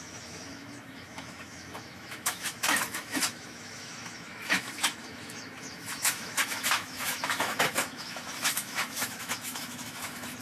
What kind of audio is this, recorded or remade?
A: remade